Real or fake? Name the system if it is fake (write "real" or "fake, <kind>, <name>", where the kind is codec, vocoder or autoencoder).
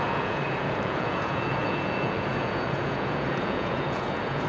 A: fake, vocoder, Vocos